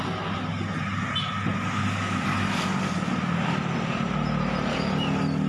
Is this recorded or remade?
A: recorded